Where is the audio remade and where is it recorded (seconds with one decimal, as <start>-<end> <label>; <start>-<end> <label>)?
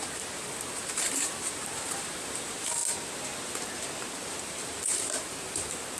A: 0.0-2.8 remade; 2.8-4.4 recorded; 4.4-6.0 remade